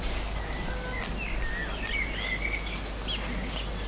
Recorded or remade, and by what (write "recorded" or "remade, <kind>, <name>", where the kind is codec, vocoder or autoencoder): recorded